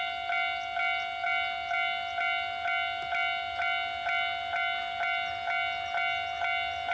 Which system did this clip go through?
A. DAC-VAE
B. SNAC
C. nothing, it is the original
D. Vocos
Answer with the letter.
C